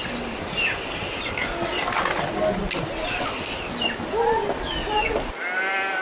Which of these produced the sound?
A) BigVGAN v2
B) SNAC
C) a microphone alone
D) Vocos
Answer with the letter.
C